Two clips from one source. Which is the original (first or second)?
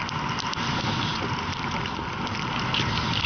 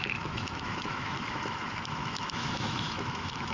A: first